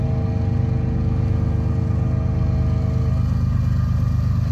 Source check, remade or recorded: recorded